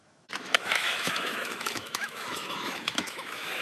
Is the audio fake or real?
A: fake